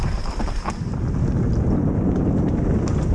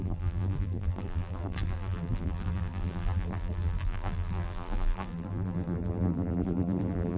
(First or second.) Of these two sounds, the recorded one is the first